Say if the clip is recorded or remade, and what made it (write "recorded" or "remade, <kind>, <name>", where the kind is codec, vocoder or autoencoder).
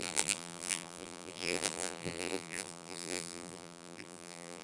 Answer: remade, vocoder, BigVGAN v2